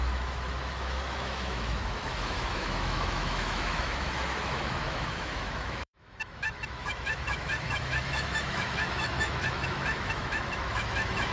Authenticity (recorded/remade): remade